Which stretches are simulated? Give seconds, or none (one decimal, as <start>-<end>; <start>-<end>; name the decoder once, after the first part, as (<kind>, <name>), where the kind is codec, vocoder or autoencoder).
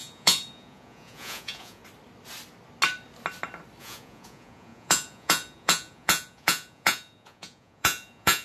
0.0-1.8 (vocoder, Vocos); 3.8-8.4